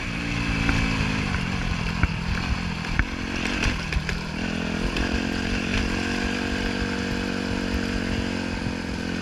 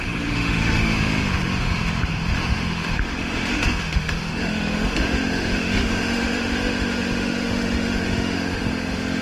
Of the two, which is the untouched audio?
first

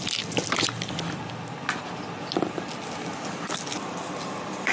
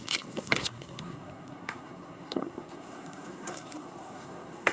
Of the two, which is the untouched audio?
first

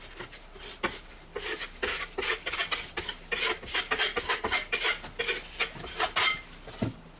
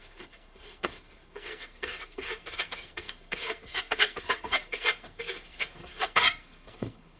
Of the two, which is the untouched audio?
first